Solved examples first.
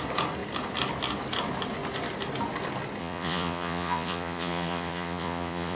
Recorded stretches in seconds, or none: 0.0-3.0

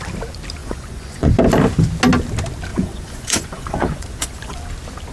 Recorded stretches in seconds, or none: 0.0-0.6; 1.3-2.7; 4.6-5.1

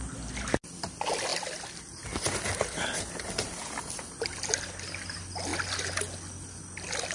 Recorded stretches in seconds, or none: 0.0-7.1

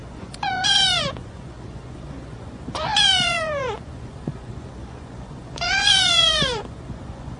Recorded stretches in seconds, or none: none

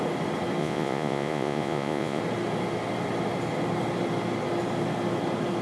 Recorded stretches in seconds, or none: 0.0-0.6; 2.2-5.6